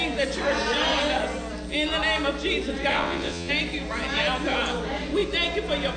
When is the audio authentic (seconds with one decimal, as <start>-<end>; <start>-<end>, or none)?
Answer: 0.0-2.9; 3.5-6.0